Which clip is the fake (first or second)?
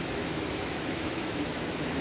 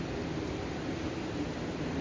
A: first